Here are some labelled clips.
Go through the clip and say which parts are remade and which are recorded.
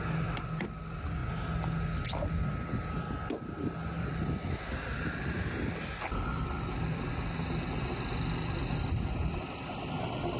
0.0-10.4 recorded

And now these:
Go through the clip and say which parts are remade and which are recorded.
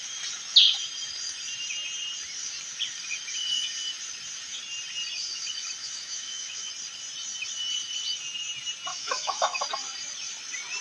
0.0-5.8 recorded; 5.8-6.7 remade; 6.7-8.9 recorded; 8.9-9.6 remade; 9.6-10.8 recorded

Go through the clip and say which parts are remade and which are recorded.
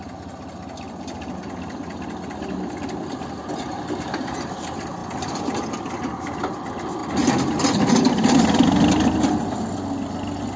0.0-10.6 recorded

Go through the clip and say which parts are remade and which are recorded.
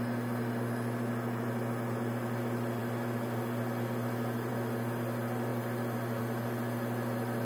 0.0-7.4 recorded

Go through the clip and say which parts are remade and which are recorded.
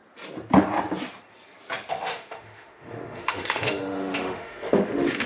0.0-1.9 recorded; 1.9-5.3 remade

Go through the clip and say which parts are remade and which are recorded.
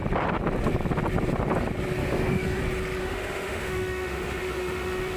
0.0-2.0 recorded; 2.0-2.6 remade; 2.6-3.0 recorded; 3.0-5.2 remade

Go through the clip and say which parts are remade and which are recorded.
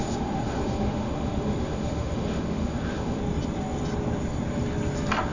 0.0-3.2 remade; 3.2-5.3 recorded